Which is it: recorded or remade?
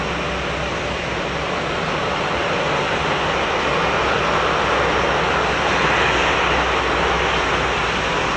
recorded